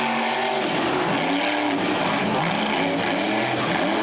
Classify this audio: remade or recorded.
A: recorded